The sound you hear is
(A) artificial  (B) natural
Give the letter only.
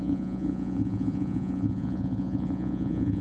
A